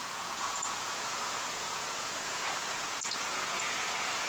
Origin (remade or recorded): remade